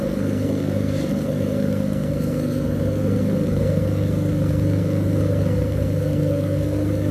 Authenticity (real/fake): fake